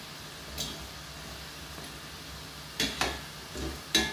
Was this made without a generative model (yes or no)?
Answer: yes